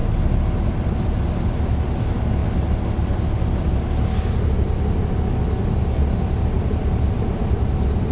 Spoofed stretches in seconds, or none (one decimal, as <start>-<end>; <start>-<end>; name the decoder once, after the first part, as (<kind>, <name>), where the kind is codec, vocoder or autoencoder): none